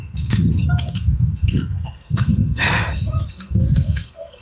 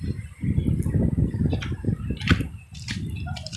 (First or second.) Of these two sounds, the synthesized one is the first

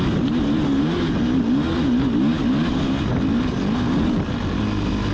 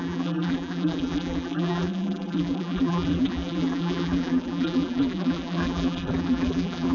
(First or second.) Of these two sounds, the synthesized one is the second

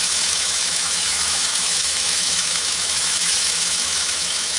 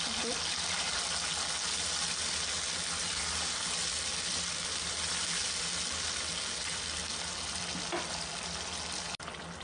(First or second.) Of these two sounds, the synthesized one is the first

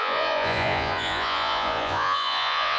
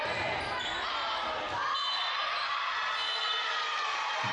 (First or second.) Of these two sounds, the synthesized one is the first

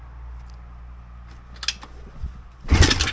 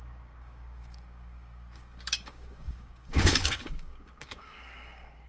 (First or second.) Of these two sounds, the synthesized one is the second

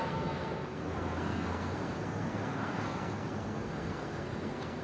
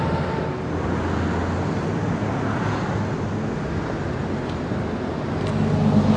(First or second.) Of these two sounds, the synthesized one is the first